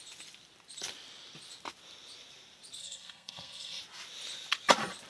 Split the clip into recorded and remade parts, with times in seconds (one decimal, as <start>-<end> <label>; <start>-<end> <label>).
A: 0.0-2.8 recorded; 2.8-3.8 remade; 3.8-5.1 recorded